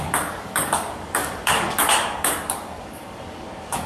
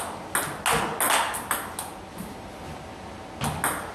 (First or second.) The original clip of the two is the second